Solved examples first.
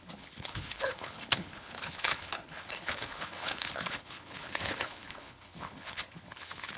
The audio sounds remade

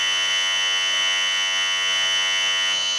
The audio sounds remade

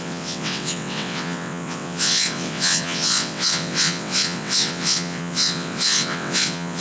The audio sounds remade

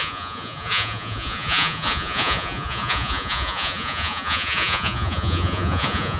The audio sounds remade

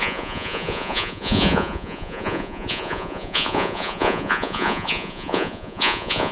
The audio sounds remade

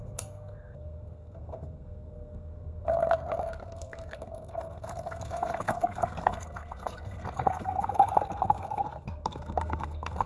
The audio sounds remade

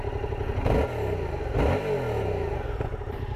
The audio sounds recorded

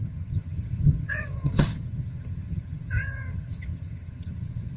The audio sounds remade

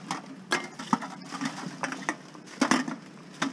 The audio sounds recorded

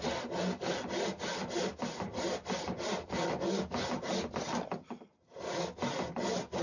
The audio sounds recorded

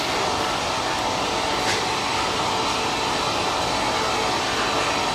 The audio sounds recorded